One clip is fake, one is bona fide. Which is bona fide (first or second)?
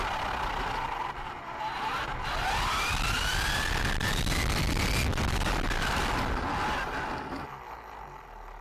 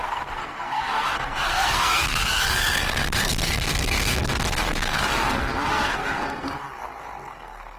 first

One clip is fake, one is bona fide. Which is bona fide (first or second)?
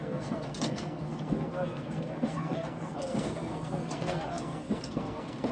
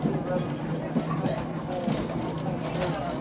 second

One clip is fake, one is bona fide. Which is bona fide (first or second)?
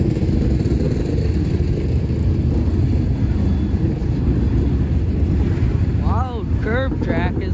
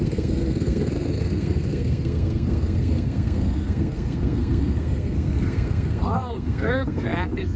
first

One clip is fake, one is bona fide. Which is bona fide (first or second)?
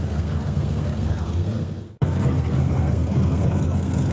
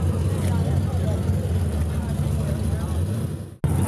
second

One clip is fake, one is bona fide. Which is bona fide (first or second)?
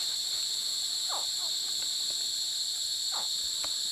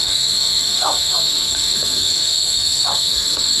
first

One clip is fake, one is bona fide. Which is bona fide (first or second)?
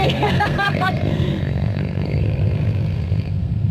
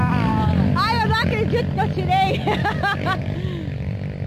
second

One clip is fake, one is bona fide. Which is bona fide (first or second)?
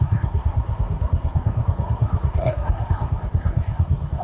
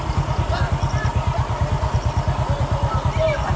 second